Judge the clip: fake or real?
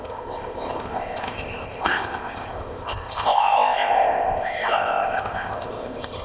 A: fake